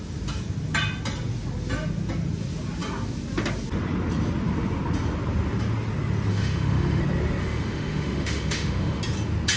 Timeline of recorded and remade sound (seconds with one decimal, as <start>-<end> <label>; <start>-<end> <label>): 0.0-6.3 recorded; 6.3-7.0 remade; 7.0-7.4 recorded; 7.4-9.0 remade; 9.0-9.6 recorded